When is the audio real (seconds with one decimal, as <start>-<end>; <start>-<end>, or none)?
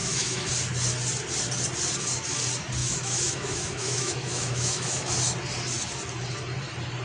0.5-2.8; 5.1-7.0